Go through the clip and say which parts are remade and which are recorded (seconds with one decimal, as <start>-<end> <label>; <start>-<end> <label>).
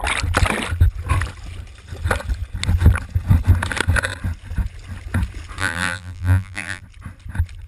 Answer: 0.0-5.6 recorded; 5.6-6.8 remade; 6.8-7.7 recorded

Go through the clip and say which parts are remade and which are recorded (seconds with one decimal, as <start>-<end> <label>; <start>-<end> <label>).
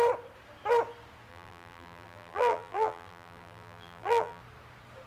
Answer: 0.0-1.3 recorded; 1.3-4.4 remade; 4.4-5.1 recorded